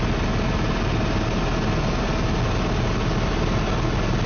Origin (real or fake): real